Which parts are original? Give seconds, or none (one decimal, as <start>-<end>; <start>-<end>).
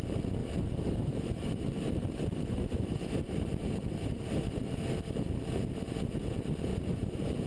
0.0-0.4; 4.4-6.7